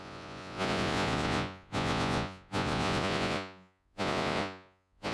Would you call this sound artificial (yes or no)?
yes